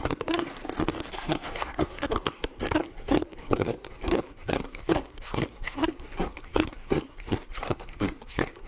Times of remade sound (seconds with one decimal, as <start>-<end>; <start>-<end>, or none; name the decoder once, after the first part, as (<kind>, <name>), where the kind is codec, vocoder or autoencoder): 0.0-0.5 (codec, SNAC); 1.1-8.7